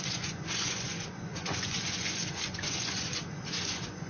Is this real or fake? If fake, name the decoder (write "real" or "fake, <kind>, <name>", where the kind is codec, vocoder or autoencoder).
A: fake, vocoder, Vocos